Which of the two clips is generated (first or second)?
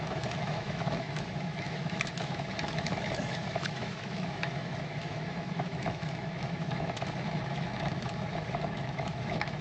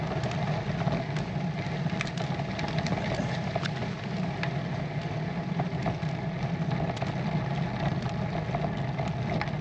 first